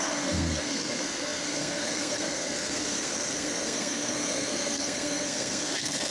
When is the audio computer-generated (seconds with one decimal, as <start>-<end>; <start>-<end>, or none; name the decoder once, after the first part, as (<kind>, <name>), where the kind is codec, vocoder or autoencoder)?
0.0-6.1 (codec, SNAC)